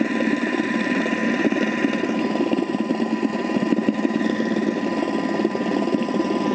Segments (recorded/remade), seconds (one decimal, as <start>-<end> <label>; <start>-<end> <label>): 0.0-6.5 recorded